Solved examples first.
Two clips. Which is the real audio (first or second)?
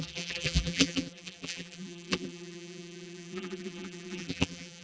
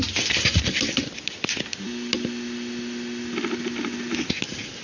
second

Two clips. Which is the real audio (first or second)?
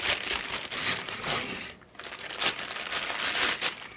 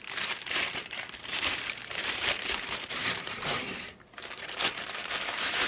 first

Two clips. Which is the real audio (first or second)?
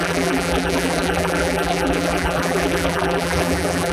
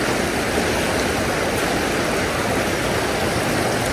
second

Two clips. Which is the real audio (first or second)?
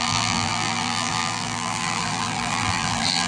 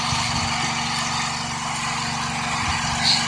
second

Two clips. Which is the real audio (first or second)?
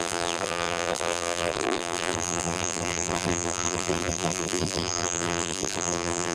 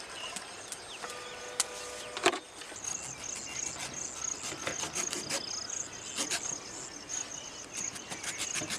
second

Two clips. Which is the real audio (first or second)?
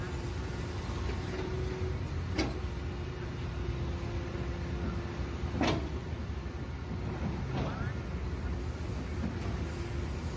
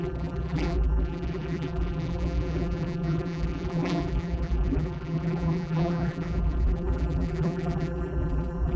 first